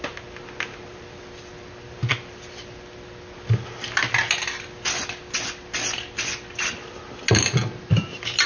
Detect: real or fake real